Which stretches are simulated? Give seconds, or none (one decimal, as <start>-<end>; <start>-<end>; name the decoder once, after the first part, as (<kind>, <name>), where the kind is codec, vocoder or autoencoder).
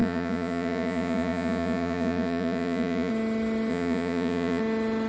0.0-3.1 (vocoder, Vocos); 3.7-4.6